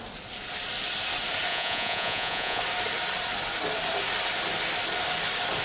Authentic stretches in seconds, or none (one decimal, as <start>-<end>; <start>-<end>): 0.0-1.5; 2.6-5.6